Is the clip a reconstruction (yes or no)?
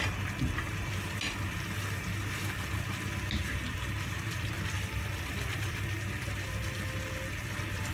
no